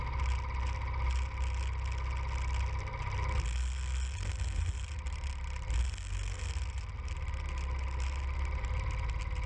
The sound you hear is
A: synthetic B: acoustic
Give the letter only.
B